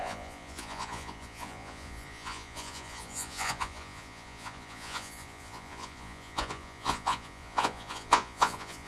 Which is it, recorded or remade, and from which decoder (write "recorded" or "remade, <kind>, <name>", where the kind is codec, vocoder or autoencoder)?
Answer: remade, vocoder, Vocos